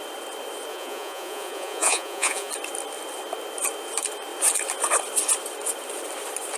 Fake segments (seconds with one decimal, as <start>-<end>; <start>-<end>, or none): 0.7-2.5